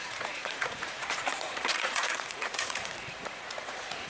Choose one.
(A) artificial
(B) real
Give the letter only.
A